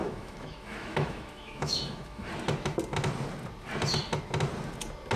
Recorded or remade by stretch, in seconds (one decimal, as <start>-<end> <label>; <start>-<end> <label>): 0.0-2.3 remade; 2.3-5.2 recorded